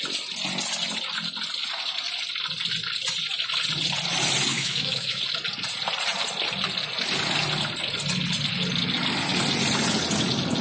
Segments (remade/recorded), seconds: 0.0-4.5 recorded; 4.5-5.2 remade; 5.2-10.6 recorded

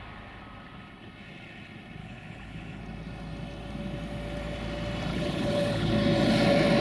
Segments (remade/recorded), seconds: 0.0-2.0 recorded; 2.0-2.8 remade; 2.8-5.1 recorded; 5.1-5.9 remade; 5.9-6.8 recorded

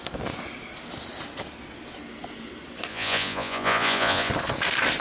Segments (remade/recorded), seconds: 0.0-2.9 recorded; 2.9-4.3 remade; 4.3-5.0 recorded

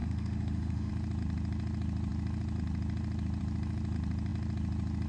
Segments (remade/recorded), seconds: 0.0-0.9 remade; 0.9-5.1 recorded

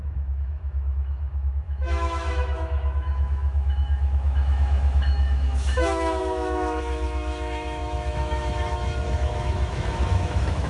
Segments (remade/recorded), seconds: 0.0-10.7 remade

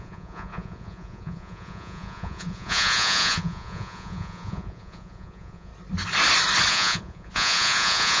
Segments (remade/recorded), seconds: 0.0-5.7 remade; 5.7-6.7 recorded; 6.7-8.2 remade